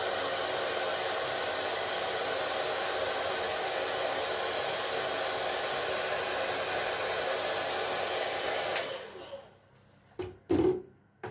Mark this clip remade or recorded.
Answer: recorded